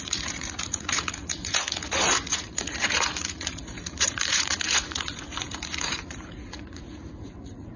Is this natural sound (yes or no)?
no